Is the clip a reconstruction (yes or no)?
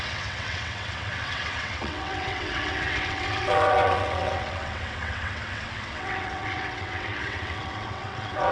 yes